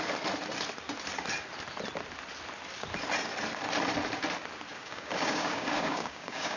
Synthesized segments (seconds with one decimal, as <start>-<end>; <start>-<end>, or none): 4.7-6.6